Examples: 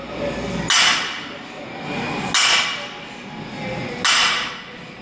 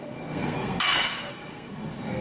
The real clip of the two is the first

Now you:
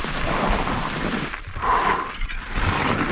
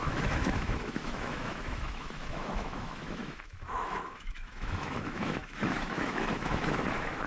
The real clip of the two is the first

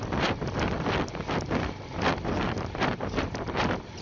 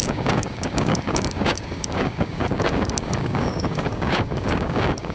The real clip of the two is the first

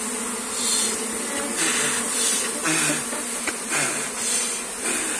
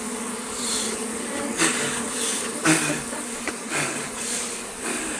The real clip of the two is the first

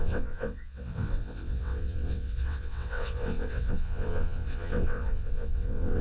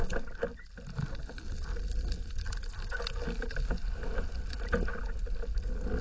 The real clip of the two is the second